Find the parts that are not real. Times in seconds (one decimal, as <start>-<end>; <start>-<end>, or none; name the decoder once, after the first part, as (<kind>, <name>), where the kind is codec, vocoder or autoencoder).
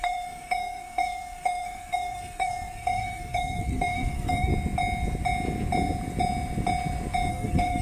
0.0-4.5 (codec, SNAC); 7.3-7.8